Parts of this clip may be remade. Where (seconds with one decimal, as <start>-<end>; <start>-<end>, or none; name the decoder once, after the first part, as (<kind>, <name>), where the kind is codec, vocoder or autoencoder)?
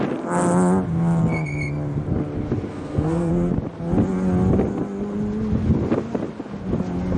2.7-3.3 (codec, SNAC)